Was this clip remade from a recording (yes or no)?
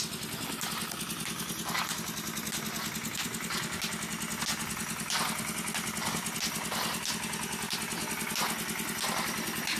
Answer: no